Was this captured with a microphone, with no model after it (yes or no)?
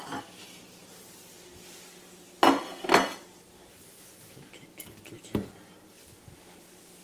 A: yes